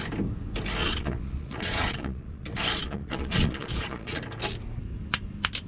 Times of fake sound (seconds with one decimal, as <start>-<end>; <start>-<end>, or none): 0.8-4.2